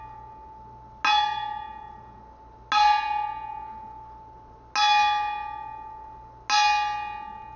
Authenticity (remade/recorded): recorded